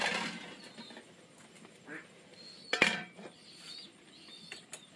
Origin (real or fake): real